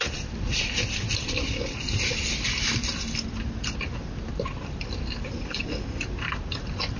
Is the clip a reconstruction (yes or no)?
yes